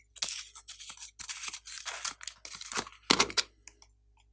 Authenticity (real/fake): real